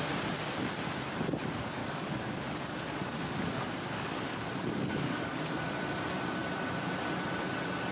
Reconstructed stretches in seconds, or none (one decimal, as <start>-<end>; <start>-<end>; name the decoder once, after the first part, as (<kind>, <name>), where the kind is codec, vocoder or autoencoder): 1.8-5.5 (codec, DAC)